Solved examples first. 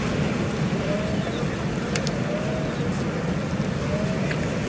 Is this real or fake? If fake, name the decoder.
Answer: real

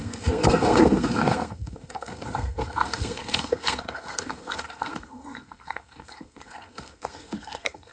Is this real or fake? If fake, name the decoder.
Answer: fake, codec, SNAC